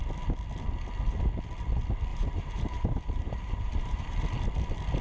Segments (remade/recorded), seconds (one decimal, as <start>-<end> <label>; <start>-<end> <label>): 0.0-2.1 recorded; 2.1-4.4 remade; 4.4-5.0 recorded